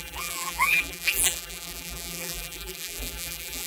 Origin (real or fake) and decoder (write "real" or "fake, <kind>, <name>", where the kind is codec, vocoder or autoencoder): fake, vocoder, BigVGAN v2